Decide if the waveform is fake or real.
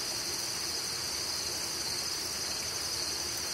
real